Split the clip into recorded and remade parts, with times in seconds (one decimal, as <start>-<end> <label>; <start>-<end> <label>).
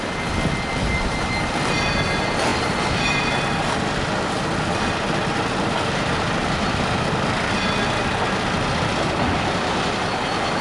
0.0-10.6 recorded